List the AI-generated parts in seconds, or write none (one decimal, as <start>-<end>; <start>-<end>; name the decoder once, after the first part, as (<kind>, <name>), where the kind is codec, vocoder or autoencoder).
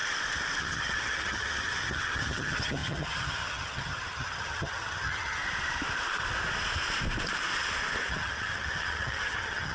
0.6-5.4 (vocoder, HiFi-GAN); 8.1-9.7